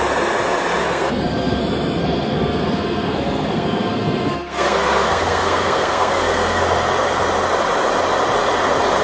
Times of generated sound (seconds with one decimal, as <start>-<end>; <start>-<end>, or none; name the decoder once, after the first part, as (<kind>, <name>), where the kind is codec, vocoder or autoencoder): 0.8-1.6 (codec, SNAC); 2.0-6.6